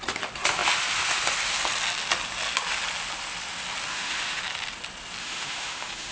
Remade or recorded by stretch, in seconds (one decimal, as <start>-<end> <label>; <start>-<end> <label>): 0.0-3.9 recorded; 3.9-4.4 remade; 4.4-5.2 recorded; 5.2-6.1 remade